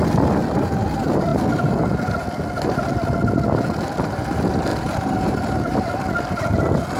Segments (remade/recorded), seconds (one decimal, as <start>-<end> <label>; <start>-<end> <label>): 0.0-4.7 recorded; 4.7-5.9 remade; 5.9-7.0 recorded